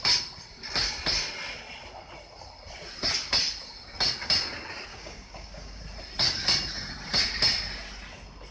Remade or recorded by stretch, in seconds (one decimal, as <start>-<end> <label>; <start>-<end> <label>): 0.0-4.9 recorded; 4.9-5.8 remade; 5.8-8.5 recorded